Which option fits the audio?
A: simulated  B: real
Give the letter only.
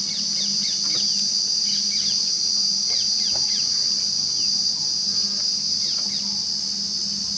B